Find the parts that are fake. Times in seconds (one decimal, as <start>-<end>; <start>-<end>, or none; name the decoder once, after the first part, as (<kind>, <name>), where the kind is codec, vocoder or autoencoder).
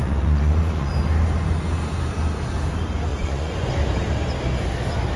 0.0-0.9 (vocoder, Vocos); 3.1-3.7